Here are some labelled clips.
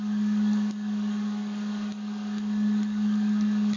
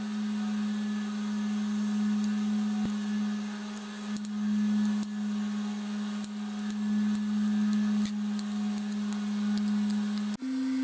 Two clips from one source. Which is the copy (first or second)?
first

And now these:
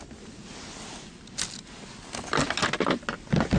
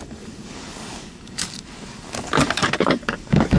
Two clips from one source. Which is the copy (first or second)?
second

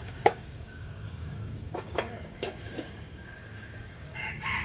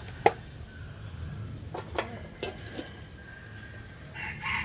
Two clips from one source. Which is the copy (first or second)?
first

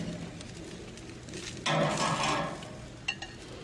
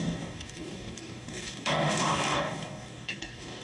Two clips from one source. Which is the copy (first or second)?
second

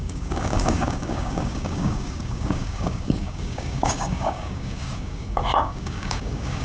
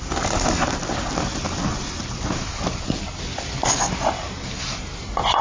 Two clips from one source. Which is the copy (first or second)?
first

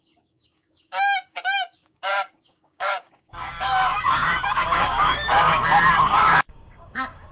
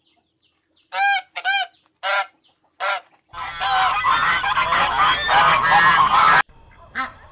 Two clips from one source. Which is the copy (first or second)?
first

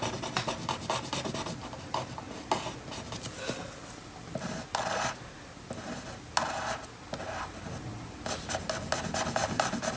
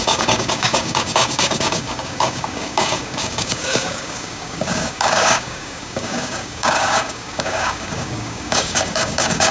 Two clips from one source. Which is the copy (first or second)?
second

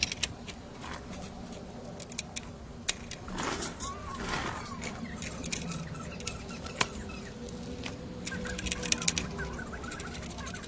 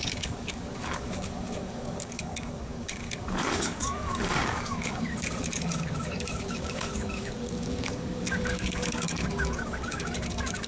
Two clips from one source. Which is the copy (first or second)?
second